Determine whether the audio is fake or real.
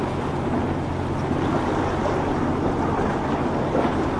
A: real